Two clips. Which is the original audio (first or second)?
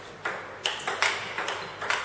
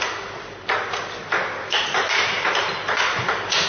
first